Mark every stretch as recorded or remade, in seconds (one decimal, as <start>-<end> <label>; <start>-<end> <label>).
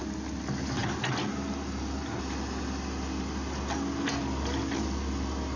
0.0-5.6 recorded